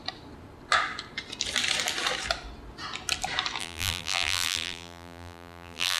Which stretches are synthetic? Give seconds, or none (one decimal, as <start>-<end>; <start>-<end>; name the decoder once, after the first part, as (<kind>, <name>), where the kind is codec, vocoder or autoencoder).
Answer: 3.6-6.0 (vocoder, BigVGAN v2)